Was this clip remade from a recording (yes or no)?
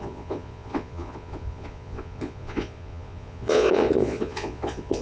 yes